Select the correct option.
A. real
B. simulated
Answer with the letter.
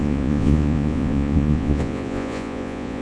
B